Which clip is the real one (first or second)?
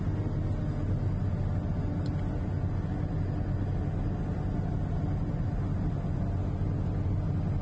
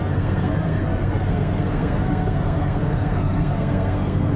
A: first